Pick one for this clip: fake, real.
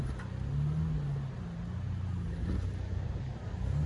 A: real